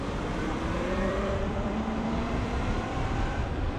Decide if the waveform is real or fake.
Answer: fake